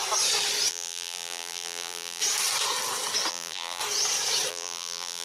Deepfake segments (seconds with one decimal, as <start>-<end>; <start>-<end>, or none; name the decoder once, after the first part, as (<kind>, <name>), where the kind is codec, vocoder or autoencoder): 0.7-2.2 (vocoder, BigVGAN v2); 3.3-3.8; 4.5-5.2